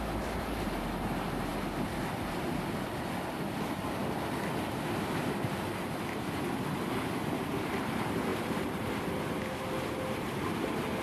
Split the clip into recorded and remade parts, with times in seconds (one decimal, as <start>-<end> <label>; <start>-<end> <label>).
0.0-11.0 recorded